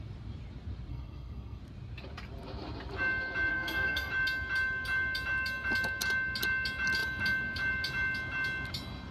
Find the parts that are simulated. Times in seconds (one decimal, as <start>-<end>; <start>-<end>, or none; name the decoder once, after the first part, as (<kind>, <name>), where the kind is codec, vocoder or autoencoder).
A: 0.9-1.6 (codec, SNAC); 3.5-4.1